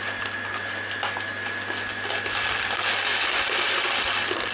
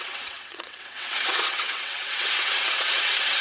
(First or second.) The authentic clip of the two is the first